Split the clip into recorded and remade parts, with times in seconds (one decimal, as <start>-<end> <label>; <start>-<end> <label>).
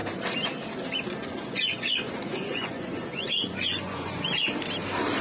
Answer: 0.0-1.2 recorded; 1.2-4.3 remade; 4.3-5.2 recorded